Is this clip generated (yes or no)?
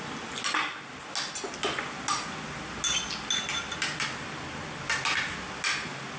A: no